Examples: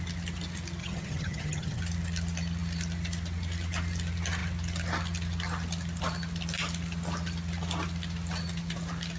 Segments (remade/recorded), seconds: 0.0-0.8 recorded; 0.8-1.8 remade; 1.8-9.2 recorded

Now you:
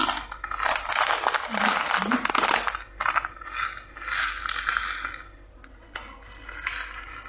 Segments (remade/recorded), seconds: 0.0-7.3 recorded

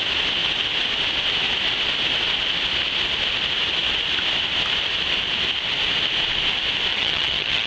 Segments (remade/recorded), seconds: 0.0-6.9 recorded; 6.9-7.7 remade

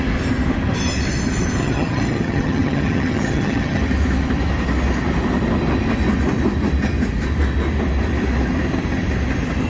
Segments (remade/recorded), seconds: 0.0-1.6 recorded; 1.6-3.8 remade; 3.8-9.7 recorded

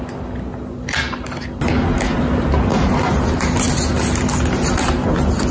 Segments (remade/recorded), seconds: 0.0-5.5 recorded

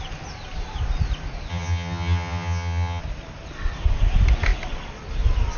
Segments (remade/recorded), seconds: 0.0-1.5 recorded; 1.5-3.0 remade; 3.0-5.6 recorded

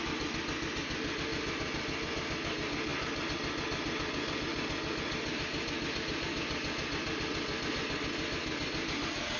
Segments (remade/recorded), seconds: 0.0-9.4 recorded

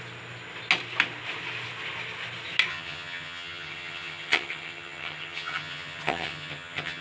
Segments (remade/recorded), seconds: 0.0-2.7 recorded; 2.7-7.0 remade